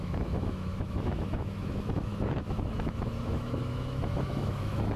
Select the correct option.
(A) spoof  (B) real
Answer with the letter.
A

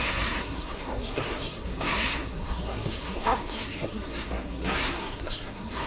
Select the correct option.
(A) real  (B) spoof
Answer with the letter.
B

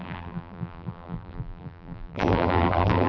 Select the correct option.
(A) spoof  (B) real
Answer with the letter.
A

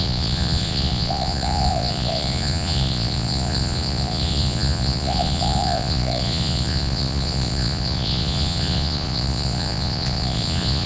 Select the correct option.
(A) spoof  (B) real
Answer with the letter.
A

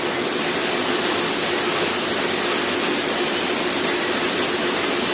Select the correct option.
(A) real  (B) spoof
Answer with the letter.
A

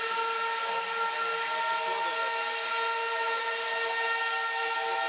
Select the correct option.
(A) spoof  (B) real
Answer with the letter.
B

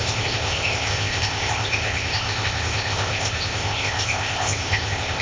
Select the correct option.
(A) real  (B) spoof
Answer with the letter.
B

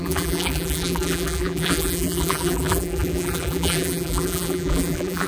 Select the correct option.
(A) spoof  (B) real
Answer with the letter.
A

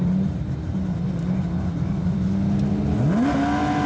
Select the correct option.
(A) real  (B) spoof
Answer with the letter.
A